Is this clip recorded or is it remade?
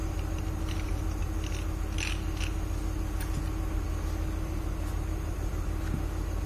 recorded